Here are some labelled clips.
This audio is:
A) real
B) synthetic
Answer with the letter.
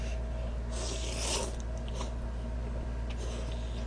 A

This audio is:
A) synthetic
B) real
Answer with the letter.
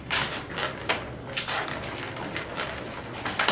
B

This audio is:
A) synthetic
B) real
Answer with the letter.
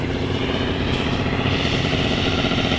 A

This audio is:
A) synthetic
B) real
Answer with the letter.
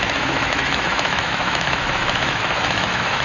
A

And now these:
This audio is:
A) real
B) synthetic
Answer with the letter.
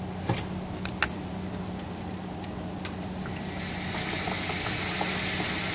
A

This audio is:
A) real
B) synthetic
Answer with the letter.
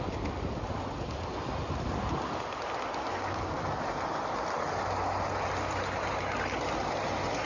A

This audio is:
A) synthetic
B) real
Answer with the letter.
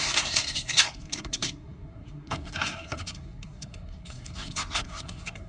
A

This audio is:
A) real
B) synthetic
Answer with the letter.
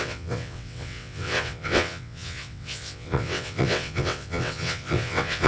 B